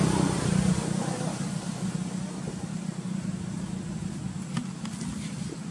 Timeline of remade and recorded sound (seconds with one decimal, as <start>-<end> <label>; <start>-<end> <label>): 0.0-2.7 recorded; 2.7-4.2 remade; 4.2-5.7 recorded